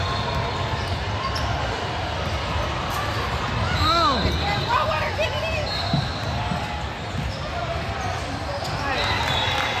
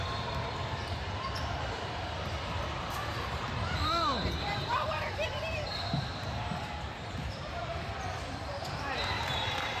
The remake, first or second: second